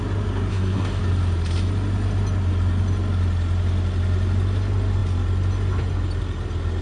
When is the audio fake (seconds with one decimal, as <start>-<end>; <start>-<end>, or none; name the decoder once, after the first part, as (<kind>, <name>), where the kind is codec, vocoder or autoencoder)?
0.5-1.0 (codec, SNAC)